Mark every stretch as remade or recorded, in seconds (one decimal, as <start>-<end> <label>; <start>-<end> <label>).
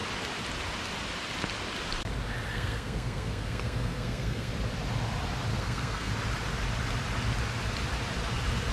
0.0-2.5 recorded; 2.5-4.5 remade; 4.5-5.5 recorded; 5.5-6.1 remade; 6.1-8.7 recorded